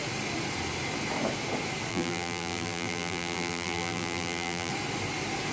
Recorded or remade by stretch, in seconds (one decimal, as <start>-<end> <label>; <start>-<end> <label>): 0.0-1.9 recorded; 1.9-4.7 remade; 4.7-5.5 recorded